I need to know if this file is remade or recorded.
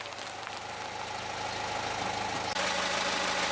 recorded